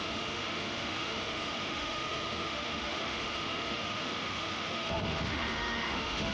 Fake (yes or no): yes